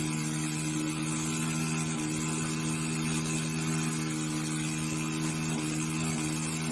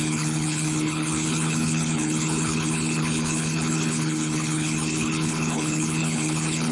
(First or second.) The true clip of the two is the first